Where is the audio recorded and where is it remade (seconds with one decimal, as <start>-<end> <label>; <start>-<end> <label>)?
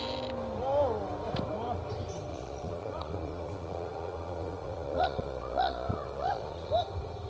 0.0-2.3 recorded; 2.3-6.7 remade; 6.7-7.3 recorded